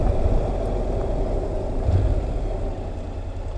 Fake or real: real